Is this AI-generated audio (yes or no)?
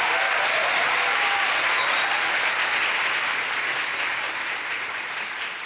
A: no